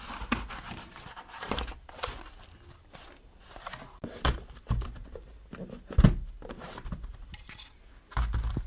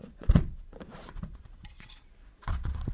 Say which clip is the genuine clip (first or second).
first